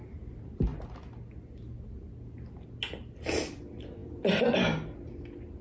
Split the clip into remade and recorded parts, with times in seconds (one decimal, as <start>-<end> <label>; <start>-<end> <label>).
0.0-5.6 recorded